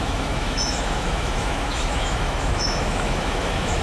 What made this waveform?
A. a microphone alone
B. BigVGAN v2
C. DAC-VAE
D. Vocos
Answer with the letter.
C